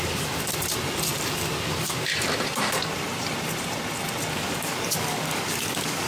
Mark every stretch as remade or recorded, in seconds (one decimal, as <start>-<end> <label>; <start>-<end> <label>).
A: 0.0-0.5 remade; 0.5-1.3 recorded; 1.3-2.1 remade; 2.1-4.3 recorded; 4.3-6.1 remade